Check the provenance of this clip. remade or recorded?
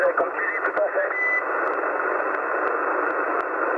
recorded